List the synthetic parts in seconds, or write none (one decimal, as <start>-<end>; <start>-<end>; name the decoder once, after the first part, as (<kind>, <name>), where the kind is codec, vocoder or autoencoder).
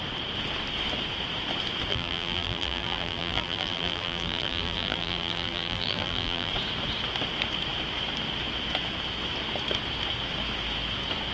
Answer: 1.9-6.5 (vocoder, BigVGAN v2)